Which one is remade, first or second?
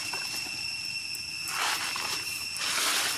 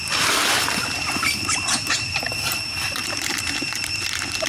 second